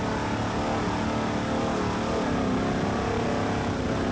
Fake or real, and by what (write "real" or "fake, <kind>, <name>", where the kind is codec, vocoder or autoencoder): real